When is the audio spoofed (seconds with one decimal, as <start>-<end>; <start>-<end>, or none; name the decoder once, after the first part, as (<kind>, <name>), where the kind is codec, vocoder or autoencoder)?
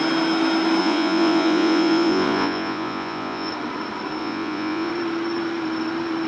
0.8-3.5 (vocoder, Vocos); 4.2-4.9